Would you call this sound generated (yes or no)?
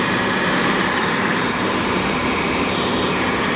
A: yes